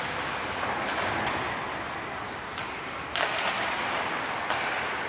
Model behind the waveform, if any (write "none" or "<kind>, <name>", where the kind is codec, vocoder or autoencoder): none